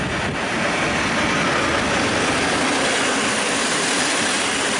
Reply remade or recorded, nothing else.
recorded